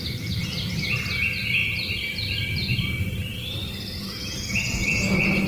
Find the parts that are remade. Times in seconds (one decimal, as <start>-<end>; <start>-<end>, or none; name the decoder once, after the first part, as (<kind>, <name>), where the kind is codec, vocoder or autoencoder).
1.6-2.9 (vocoder, BigVGAN v2)